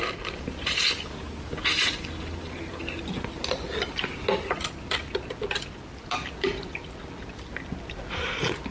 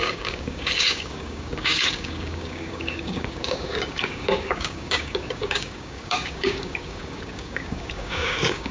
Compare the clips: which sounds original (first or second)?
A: first